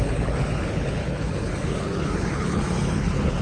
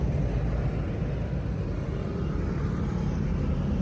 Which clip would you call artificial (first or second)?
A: first